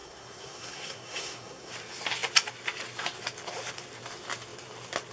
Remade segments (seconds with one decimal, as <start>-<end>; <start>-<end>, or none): 0.0-1.7